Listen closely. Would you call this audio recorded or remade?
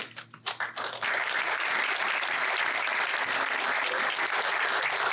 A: recorded